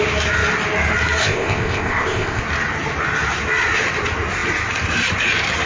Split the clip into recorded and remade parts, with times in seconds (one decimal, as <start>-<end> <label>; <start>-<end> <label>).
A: 0.0-1.2 recorded; 1.2-2.4 remade; 2.4-5.7 recorded